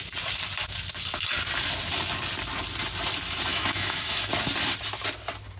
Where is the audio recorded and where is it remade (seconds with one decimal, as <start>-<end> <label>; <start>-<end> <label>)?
0.0-3.5 recorded; 3.5-4.3 remade; 4.3-5.6 recorded